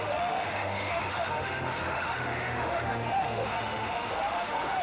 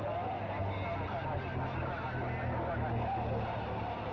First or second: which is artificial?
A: first